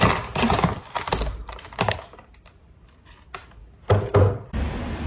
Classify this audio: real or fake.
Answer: real